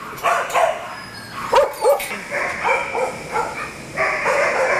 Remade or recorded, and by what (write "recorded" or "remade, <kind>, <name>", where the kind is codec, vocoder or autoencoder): recorded